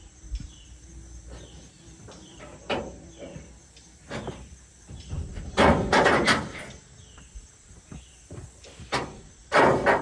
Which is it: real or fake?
fake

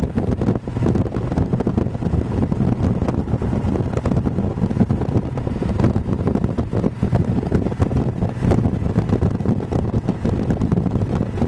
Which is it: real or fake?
real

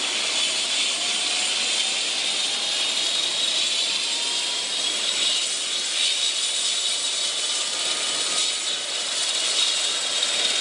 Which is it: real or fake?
real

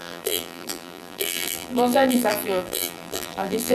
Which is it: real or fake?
fake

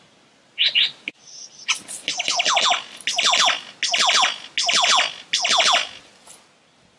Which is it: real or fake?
real